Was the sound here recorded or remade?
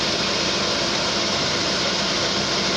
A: recorded